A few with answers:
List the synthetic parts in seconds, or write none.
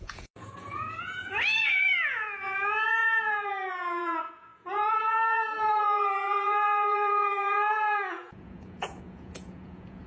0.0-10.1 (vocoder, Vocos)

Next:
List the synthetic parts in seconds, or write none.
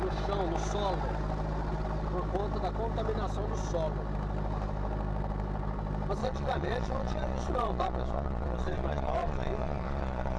6.2-10.4 (vocoder, Vocos)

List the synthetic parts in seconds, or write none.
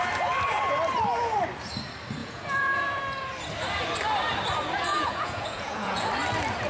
2.2-3.0 (vocoder, Vocos); 4.9-6.1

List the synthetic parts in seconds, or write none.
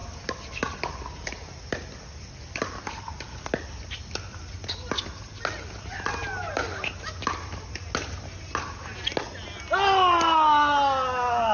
none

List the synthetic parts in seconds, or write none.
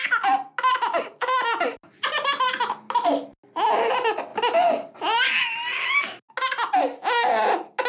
none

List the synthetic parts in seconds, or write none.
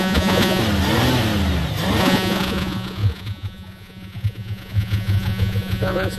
0.0-0.6 (vocoder, Vocos); 2.0-6.2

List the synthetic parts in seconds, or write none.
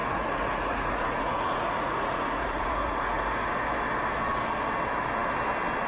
0.0-3.5 (vocoder, Vocos)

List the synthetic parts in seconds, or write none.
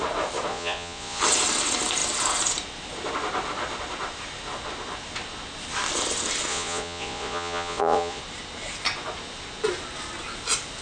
0.5-1.2 (vocoder, Vocos); 6.5-8.2